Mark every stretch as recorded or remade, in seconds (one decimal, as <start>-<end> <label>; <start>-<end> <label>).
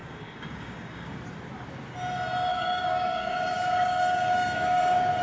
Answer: 0.0-1.2 remade; 1.2-2.5 recorded; 2.5-5.2 remade